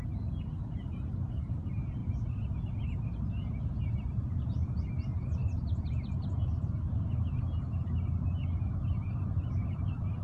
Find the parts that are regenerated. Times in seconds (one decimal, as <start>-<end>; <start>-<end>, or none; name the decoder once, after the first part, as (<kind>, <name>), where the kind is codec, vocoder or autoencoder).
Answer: none